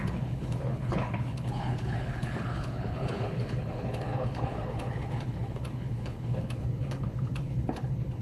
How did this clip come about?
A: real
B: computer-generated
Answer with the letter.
B